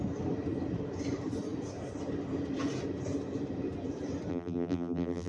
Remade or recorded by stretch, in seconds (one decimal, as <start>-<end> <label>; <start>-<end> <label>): 0.0-4.3 recorded; 4.3-5.3 remade